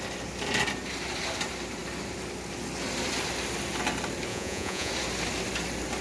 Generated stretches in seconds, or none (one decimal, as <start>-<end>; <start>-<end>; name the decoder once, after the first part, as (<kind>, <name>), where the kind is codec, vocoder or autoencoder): 4.3-4.9 (vocoder, Vocos)